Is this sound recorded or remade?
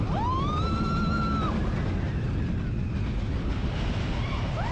recorded